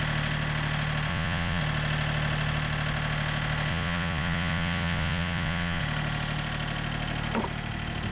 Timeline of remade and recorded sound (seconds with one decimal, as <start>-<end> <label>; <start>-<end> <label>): 0.0-1.1 recorded; 1.1-1.6 remade; 1.6-3.7 recorded; 3.7-5.8 remade; 5.8-8.1 recorded